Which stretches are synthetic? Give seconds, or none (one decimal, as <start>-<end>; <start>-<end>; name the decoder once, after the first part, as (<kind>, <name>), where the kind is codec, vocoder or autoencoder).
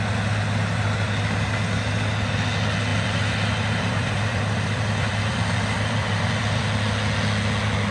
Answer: 2.9-6.6 (vocoder, BigVGAN v2)